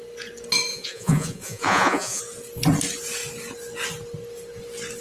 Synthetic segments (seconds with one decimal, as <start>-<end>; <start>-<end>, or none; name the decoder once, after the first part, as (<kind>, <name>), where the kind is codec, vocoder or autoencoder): 0.7-2.2 (vocoder, Vocos)